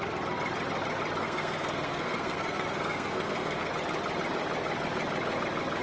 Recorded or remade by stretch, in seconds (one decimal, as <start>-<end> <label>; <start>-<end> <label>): 0.0-1.2 recorded; 1.2-3.7 remade; 3.7-5.8 recorded